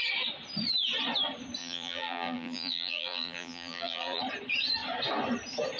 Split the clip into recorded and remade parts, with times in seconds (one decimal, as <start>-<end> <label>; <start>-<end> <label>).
0.0-1.6 recorded; 1.6-4.2 remade; 4.2-5.8 recorded